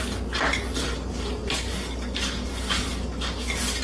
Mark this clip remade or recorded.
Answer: recorded